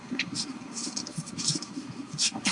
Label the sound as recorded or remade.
remade